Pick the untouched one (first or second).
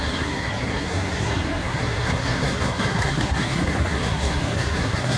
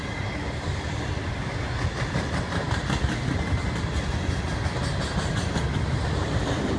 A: second